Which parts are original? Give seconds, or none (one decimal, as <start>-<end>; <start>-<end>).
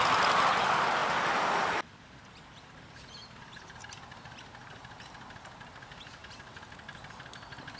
0.0-7.8